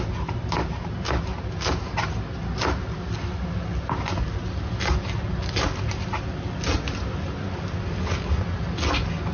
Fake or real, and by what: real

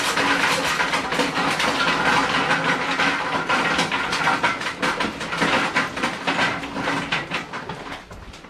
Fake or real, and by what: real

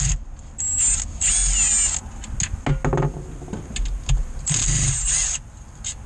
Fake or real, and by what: real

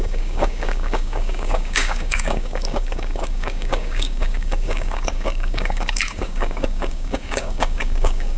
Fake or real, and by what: fake, codec, DAC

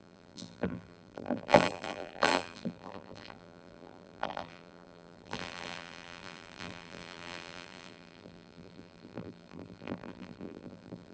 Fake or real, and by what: fake, vocoder, BigVGAN v2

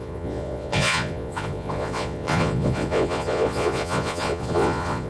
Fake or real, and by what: fake, vocoder, Vocos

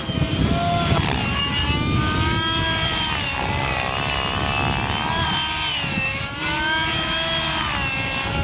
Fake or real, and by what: real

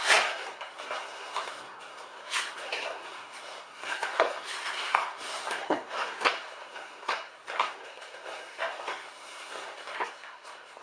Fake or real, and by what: fake, codec, SNAC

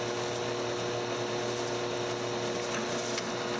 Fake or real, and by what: real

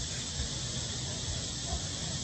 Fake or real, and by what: fake, vocoder, Vocos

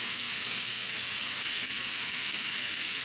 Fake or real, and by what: fake, codec, SNAC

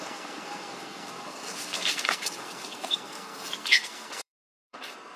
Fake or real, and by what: fake, codec, SNAC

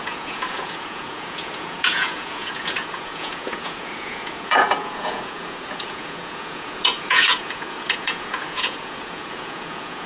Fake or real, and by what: fake, vocoder, Vocos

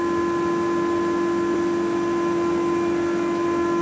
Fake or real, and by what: real